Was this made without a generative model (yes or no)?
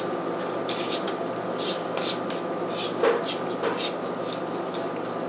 yes